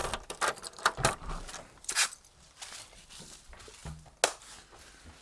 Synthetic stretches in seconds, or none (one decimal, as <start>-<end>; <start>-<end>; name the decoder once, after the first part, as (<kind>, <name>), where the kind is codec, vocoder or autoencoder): 0.0-3.1 (vocoder, BigVGAN v2)